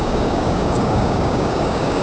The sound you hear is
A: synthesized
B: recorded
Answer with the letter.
A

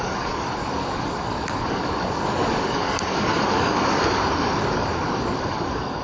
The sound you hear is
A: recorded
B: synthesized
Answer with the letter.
B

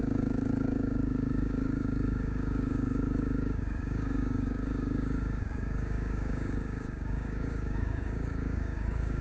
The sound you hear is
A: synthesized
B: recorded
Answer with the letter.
A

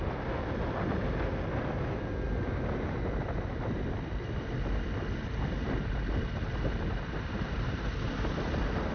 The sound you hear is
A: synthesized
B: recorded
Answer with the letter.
B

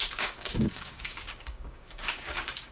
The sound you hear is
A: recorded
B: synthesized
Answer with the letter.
B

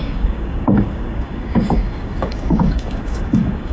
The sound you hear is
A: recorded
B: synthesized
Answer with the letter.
B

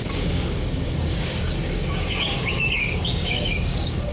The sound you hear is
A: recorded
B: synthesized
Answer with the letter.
B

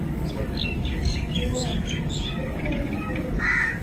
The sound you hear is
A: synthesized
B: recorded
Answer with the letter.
A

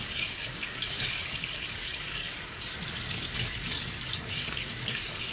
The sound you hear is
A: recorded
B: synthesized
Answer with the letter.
B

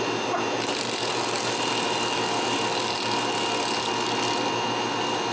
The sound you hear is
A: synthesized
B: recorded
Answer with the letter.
B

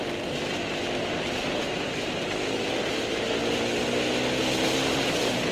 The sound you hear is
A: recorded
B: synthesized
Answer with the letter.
A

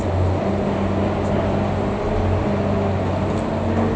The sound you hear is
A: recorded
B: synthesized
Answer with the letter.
A